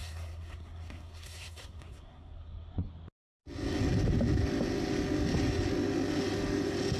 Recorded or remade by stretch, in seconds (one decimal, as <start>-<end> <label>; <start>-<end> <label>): 0.0-2.9 remade; 2.9-7.0 recorded